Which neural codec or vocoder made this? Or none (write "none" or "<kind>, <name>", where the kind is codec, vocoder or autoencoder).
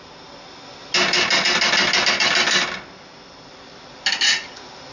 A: none